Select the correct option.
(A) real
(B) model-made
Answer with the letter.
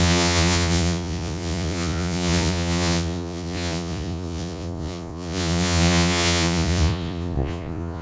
B